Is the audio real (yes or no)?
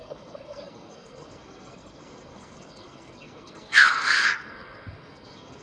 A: no